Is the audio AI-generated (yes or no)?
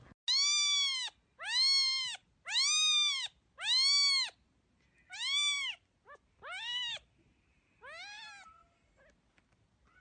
no